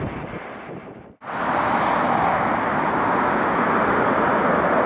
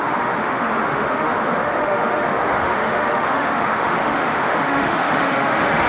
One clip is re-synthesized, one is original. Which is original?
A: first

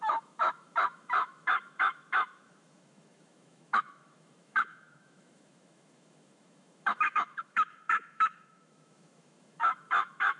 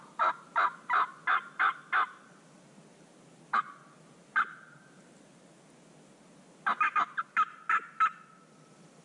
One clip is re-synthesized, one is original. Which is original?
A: second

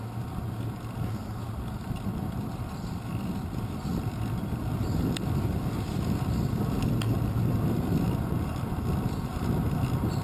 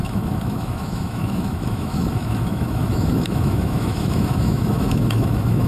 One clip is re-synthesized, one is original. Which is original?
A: first